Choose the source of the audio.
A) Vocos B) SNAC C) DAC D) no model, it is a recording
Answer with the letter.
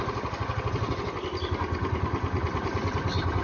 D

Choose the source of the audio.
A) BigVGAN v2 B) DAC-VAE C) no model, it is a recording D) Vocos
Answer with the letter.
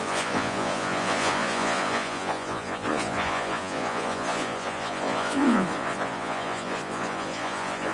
D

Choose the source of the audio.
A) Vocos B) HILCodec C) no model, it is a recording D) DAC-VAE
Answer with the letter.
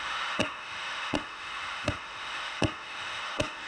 D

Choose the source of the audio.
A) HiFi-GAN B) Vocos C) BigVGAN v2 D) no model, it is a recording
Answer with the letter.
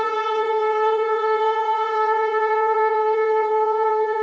B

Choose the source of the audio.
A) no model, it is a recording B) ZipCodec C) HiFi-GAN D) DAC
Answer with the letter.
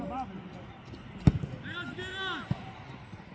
A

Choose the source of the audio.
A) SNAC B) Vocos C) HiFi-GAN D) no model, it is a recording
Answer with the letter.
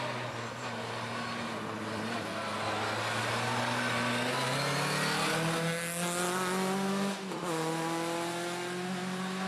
D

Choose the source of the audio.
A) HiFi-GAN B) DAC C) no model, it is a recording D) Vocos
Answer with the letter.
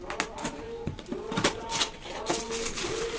C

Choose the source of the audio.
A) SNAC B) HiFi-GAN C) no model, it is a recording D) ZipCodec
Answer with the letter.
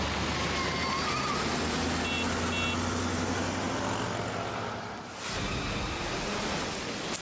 C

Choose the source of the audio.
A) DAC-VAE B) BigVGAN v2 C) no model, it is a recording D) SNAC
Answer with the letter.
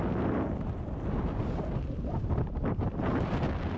C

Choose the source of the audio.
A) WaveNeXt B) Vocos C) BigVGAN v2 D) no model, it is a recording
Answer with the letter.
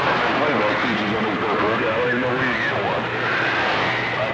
D